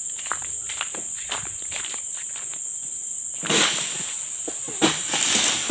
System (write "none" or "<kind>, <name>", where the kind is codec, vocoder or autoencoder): none